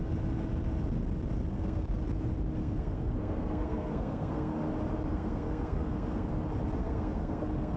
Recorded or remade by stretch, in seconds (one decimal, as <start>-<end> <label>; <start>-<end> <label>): 0.0-1.5 recorded; 1.5-2.0 remade; 2.0-2.6 recorded; 2.6-4.5 remade; 4.5-5.1 recorded; 5.1-6.3 remade; 6.3-6.8 recorded; 6.8-7.8 remade